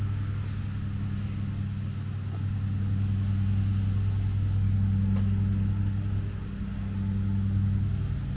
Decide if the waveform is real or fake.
real